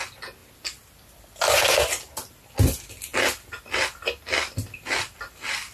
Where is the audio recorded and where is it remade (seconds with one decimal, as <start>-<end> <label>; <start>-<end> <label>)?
0.0-5.7 recorded